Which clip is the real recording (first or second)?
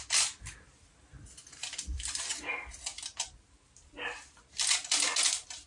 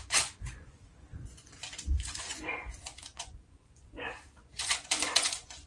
first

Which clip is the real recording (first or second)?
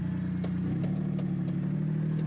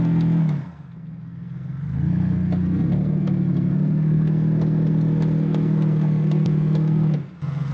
first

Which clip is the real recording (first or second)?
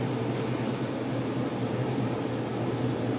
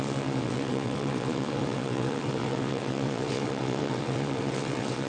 first